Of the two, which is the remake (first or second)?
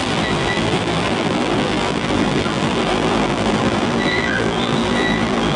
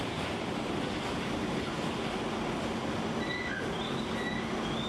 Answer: first